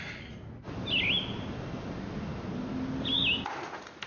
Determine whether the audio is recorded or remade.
recorded